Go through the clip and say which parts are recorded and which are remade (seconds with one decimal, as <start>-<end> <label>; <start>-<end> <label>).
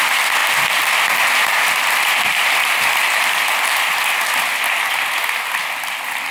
0.0-6.3 recorded